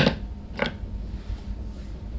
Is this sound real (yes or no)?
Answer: yes